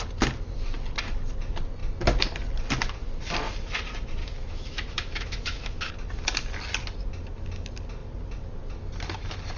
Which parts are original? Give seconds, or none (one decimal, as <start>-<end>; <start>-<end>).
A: 0.0-4.2; 5.9-9.6